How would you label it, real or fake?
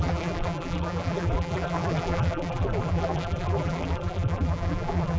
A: fake